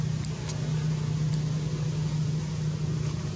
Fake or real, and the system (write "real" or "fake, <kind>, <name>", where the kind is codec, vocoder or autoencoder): real